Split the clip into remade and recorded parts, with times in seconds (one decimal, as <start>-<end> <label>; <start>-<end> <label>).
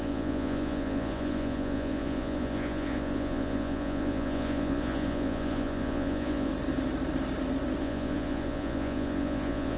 0.0-6.5 remade; 6.5-7.8 recorded; 7.8-9.8 remade